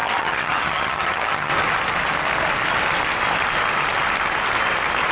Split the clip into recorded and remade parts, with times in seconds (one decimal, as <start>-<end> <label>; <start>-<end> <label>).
0.0-1.5 remade; 1.5-5.1 recorded